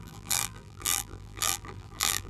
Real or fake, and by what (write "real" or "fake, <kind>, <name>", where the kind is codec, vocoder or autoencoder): fake, vocoder, BigVGAN v2